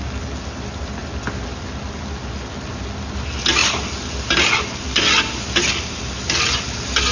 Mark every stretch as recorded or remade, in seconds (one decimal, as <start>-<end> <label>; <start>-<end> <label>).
0.0-7.1 recorded